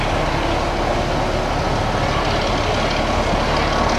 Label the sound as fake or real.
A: real